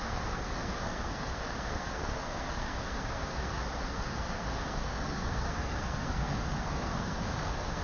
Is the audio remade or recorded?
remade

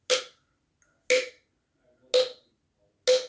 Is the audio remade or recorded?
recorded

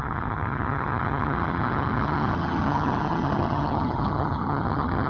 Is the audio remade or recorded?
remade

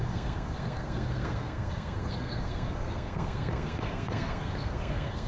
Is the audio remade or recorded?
remade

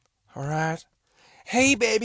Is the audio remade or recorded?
recorded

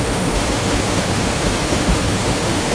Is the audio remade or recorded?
remade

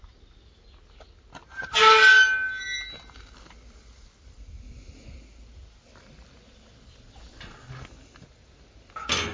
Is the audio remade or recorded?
recorded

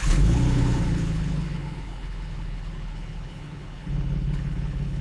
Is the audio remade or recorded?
remade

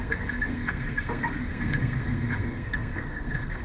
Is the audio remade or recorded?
remade